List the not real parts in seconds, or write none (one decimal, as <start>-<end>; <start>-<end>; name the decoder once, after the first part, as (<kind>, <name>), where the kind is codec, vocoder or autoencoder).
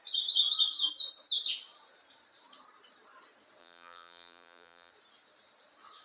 3.6-4.9 (vocoder, BigVGAN v2)